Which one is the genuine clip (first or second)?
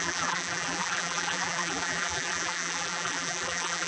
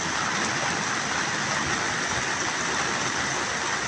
second